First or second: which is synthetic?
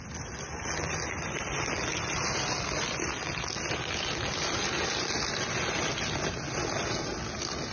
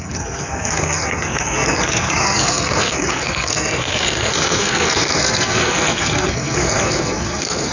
second